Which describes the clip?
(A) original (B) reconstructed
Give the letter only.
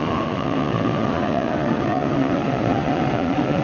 B